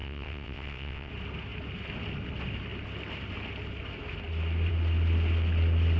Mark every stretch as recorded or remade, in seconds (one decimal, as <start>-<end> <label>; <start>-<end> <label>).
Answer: 0.0-1.1 remade; 1.1-6.0 recorded